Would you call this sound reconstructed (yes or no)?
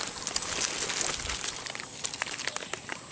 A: no